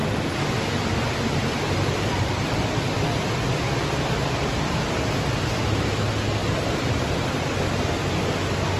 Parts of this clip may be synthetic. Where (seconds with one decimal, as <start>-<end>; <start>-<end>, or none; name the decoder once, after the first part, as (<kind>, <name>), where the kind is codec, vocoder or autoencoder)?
0.0-2.8 (vocoder, BigVGAN v2); 6.4-7.3